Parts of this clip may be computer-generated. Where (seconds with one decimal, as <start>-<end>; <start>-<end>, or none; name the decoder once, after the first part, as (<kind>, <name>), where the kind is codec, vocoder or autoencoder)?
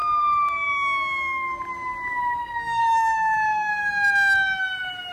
2.4-3.7 (codec, SNAC)